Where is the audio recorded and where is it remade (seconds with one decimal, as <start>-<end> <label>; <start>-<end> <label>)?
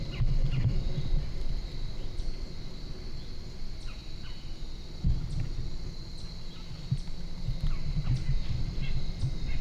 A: 0.0-0.4 recorded; 0.4-2.5 remade; 2.5-9.6 recorded